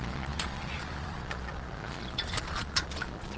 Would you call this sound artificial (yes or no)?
yes